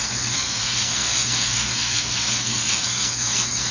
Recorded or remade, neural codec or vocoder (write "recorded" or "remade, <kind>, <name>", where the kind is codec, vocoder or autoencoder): remade, codec, SNAC